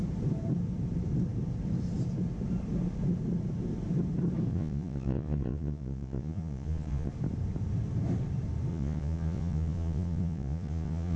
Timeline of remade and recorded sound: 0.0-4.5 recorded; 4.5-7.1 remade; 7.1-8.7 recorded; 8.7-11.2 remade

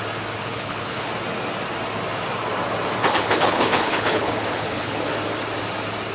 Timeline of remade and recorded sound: 0.0-0.4 recorded; 0.4-1.1 remade; 1.1-3.0 recorded; 3.0-5.0 remade; 5.0-6.1 recorded

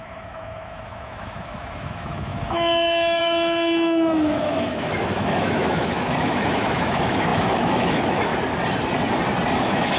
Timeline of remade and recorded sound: 0.0-8.3 remade; 8.3-9.5 recorded; 9.5-10.0 remade

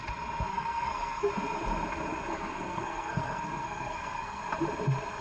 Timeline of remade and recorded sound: 0.0-0.5 recorded; 0.5-1.3 remade; 1.3-2.3 recorded; 2.3-4.4 remade; 4.4-5.2 recorded

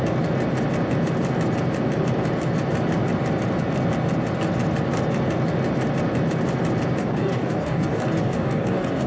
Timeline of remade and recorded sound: 0.0-7.0 recorded; 7.0-9.1 remade

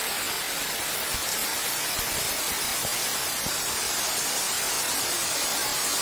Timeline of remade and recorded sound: 0.0-6.0 recorded

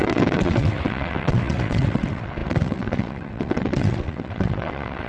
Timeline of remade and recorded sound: 0.0-5.1 remade